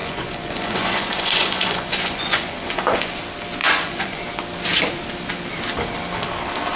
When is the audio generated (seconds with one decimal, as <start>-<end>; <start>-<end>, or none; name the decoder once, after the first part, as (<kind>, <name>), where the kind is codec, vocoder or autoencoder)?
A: 0.0-3.2 (vocoder, Vocos); 3.6-4.2